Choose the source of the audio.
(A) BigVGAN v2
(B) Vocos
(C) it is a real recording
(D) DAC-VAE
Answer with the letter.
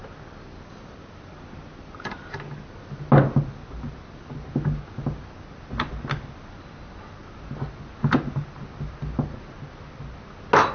C